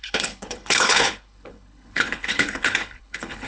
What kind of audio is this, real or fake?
fake